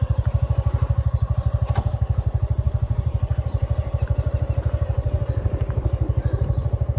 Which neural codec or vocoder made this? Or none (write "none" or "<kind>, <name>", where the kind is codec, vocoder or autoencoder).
vocoder, BigVGAN v2